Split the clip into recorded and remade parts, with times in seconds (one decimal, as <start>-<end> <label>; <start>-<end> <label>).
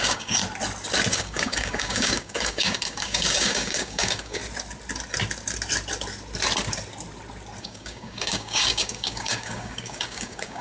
0.0-0.4 remade; 0.4-1.1 recorded; 1.1-4.4 remade; 4.4-7.6 recorded; 7.6-10.6 remade